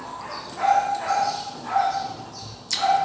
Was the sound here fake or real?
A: real